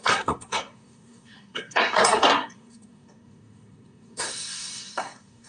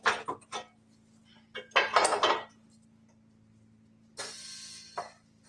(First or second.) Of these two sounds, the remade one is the first